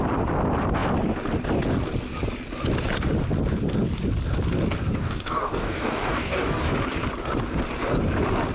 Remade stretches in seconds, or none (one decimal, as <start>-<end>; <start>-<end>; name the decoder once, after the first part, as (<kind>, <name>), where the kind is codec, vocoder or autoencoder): 5.0-6.7 (codec, DAC)

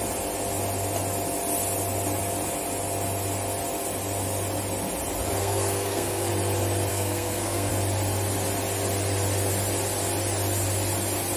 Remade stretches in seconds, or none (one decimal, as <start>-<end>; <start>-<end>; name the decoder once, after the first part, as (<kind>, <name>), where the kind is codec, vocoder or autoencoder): 5.4-6.3 (codec, SNAC); 6.9-7.7

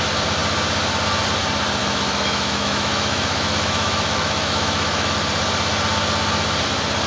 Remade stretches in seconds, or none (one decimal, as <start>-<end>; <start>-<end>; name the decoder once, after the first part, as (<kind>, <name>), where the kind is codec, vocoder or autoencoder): 1.8-5.1 (autoencoder, DAC-VAE)